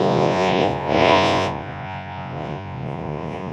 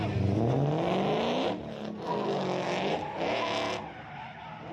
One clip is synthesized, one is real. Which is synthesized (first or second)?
first